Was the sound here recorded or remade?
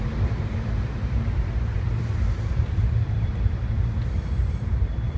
remade